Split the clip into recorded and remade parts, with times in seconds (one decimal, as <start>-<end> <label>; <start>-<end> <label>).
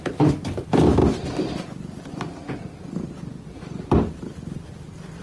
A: 0.0-5.2 remade